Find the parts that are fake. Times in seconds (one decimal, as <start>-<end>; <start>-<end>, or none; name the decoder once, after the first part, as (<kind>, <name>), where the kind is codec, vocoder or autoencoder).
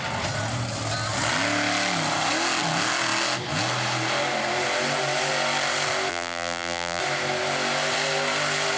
6.1-7.0 (vocoder, BigVGAN v2)